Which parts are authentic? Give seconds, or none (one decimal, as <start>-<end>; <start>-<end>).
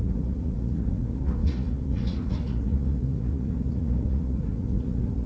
none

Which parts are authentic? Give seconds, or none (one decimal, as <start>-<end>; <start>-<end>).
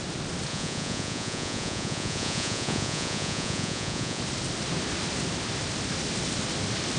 0.0-0.5; 4.2-7.0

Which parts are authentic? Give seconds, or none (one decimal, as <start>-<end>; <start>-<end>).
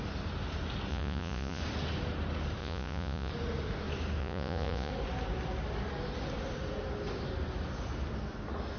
0.0-0.9; 1.6-2.6; 3.3-4.2; 4.9-8.8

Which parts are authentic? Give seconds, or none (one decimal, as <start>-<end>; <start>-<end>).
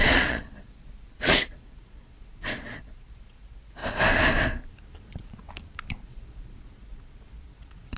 3.8-5.0; 5.4-5.9